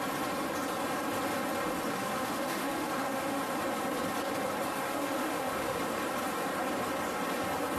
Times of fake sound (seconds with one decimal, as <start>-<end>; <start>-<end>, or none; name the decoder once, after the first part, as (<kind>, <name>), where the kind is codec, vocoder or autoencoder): 1.9-3.5 (autoencoder, DAC-VAE); 4.7-5.8